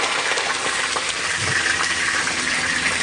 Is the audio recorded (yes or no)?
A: yes